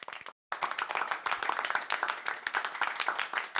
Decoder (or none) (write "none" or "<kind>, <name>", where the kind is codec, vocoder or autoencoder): none